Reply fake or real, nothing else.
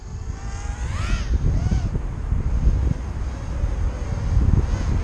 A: real